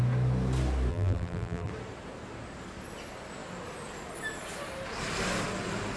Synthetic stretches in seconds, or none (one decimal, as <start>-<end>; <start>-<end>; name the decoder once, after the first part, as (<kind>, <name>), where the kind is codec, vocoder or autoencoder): 0.9-1.7 (vocoder, BigVGAN v2)